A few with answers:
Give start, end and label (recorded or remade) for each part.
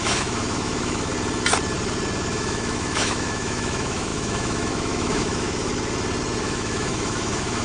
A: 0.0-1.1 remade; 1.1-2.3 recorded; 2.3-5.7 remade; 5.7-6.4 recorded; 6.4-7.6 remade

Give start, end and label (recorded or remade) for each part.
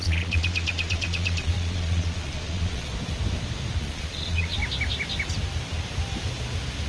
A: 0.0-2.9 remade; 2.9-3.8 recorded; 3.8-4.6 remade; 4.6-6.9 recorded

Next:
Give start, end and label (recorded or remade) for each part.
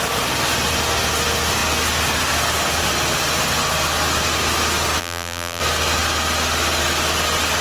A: 0.0-5.0 recorded; 5.0-5.6 remade; 5.6-7.6 recorded